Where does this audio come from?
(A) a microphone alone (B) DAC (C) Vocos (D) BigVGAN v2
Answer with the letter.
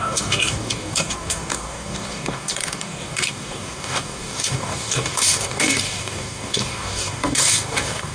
B